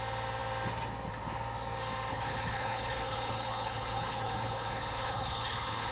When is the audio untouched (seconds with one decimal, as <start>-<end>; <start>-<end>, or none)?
0.0-2.1

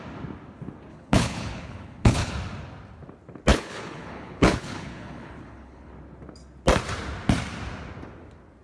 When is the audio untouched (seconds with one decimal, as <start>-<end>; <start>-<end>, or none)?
0.0-0.9; 2.3-3.5; 5.9-8.6

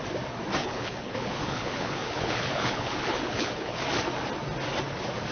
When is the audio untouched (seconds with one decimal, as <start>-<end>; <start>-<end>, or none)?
0.0-0.6; 3.8-5.3

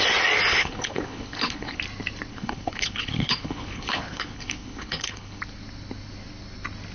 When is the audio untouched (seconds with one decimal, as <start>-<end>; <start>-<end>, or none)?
0.0-0.5; 1.8-2.3; 5.4-6.9

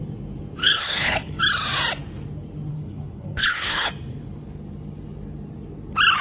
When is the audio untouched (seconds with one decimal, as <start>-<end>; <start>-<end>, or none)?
0.0-0.6; 1.4-2.7; 3.9-6.2

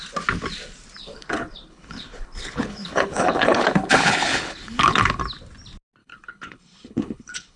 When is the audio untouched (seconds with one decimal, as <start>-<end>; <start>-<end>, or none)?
0.0-1.0; 5.2-6.0

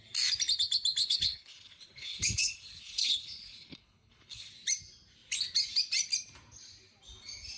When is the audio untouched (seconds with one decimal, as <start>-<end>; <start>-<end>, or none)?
0.0-1.0; 4.5-7.6

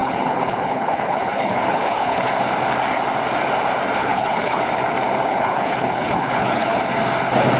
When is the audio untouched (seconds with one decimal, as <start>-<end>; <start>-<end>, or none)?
2.3-4.0; 4.6-5.3; 6.8-7.6